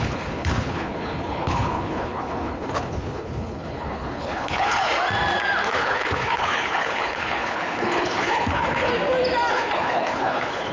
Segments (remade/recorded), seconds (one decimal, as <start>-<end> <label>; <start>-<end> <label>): 0.0-4.9 remade; 4.9-5.7 recorded; 5.7-8.9 remade; 8.9-9.5 recorded; 9.5-10.7 remade